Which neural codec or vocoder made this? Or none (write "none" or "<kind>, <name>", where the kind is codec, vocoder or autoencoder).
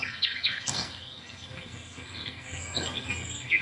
codec, SNAC